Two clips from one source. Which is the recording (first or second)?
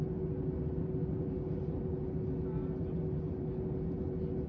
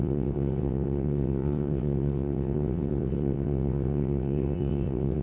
first